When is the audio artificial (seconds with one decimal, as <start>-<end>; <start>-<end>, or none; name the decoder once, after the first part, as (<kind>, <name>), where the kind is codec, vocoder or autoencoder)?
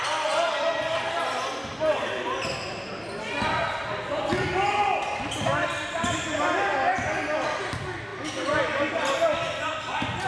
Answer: none